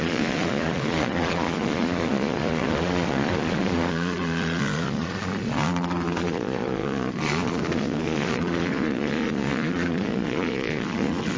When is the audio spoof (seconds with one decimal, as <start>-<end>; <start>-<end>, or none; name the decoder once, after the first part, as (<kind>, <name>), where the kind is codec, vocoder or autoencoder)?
0.0-11.4 (vocoder, Vocos)